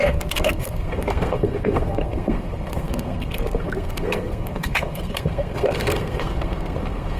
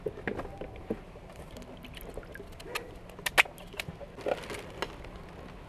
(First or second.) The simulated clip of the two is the first